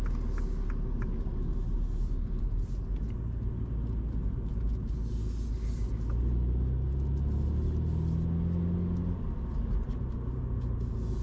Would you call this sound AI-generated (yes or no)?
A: no